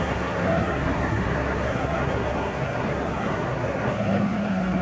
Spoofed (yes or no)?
yes